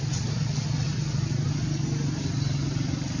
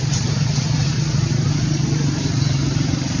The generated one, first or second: second